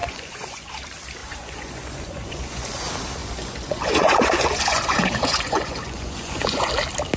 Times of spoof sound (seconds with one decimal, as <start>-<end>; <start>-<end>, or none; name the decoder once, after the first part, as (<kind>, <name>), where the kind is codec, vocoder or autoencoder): 0.0-0.7 (vocoder, Vocos); 1.2-2.8; 3.2-6.7